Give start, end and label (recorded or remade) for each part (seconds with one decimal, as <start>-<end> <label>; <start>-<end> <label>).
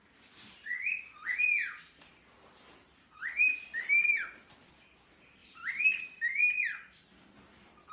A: 0.0-7.9 recorded